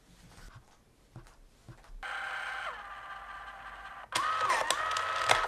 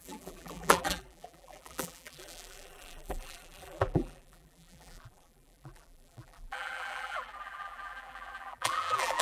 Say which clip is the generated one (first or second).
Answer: second